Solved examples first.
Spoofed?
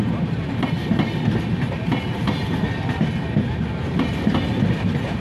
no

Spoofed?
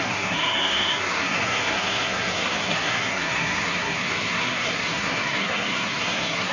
yes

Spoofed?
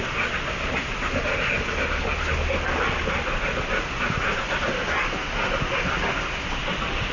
no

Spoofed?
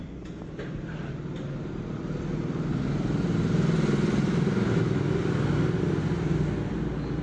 no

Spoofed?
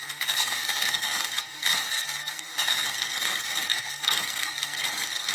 yes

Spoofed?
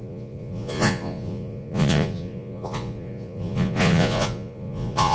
yes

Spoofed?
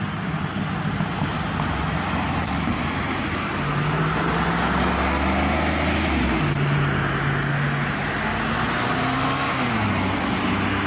no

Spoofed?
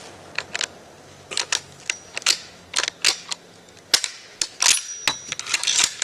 no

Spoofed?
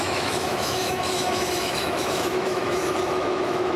yes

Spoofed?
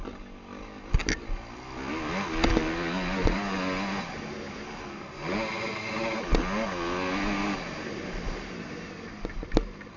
no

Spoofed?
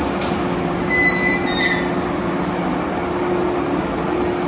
no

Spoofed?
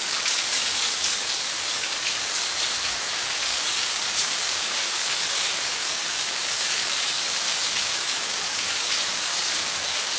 yes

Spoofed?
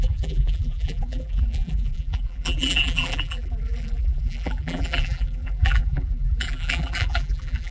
yes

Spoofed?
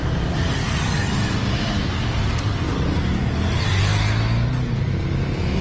no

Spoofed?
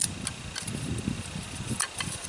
no